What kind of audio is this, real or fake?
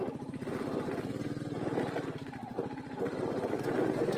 real